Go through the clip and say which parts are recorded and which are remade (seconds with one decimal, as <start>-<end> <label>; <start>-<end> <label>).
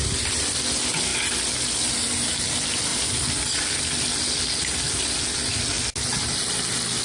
0.0-7.0 recorded